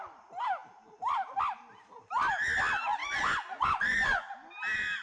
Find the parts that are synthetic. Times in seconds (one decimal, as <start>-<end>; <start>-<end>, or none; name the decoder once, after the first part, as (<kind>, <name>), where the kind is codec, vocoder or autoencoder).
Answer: 3.0-4.3 (vocoder, Vocos)